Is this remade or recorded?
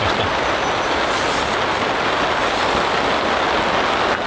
recorded